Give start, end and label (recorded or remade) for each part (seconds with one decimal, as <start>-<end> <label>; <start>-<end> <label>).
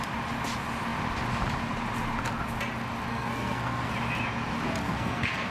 0.0-3.1 recorded; 3.1-3.9 remade; 3.9-4.8 recorded; 4.8-5.5 remade